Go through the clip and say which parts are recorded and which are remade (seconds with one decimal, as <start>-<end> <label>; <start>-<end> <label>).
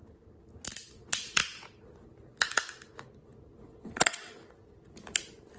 0.0-0.9 recorded; 0.9-1.4 remade; 1.4-3.6 recorded; 3.6-4.4 remade; 4.4-5.6 recorded